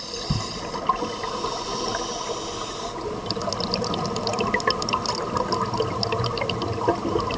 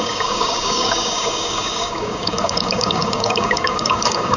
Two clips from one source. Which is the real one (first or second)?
first